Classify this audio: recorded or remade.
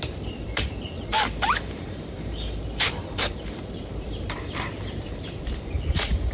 remade